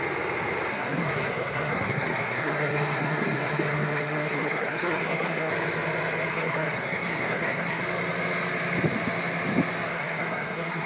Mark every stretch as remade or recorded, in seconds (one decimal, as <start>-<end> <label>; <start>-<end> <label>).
0.0-0.7 recorded; 0.7-5.5 remade; 5.5-6.3 recorded; 6.3-7.8 remade; 7.8-9.9 recorded; 9.9-10.9 remade